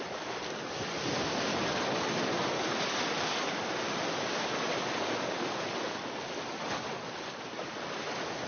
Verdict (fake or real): real